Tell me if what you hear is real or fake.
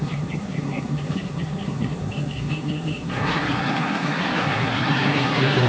fake